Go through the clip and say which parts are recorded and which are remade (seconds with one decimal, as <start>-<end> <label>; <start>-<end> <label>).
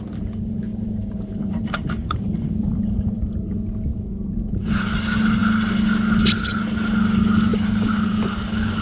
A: 0.0-0.7 recorded; 0.7-3.2 remade; 3.2-3.9 recorded; 3.9-4.6 remade; 4.6-7.5 recorded; 7.5-8.2 remade; 8.2-8.8 recorded